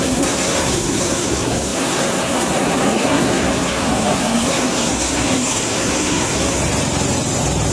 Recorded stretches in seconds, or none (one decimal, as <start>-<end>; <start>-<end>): 6.6-7.7